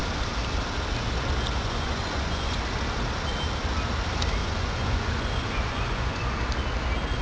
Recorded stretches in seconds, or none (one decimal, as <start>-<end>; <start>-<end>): 0.0-1.6; 2.6-4.4; 6.3-7.2

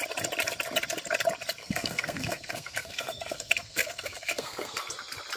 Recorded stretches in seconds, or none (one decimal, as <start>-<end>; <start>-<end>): 0.0-1.6; 4.8-5.4

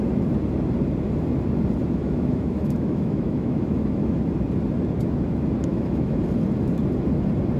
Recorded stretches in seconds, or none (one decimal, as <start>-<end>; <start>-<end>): 0.0-1.8; 4.2-5.7; 6.2-7.6

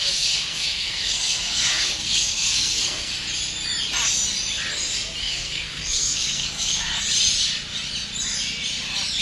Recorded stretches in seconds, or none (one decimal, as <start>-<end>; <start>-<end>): 3.1-5.2; 6.9-9.2

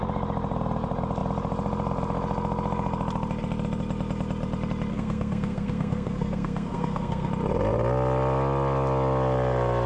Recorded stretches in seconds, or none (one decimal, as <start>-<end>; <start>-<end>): 0.0-4.9; 7.3-9.9

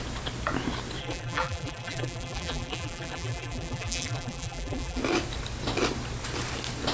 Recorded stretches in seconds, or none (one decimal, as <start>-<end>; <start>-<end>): 0.0-1.0; 5.0-6.9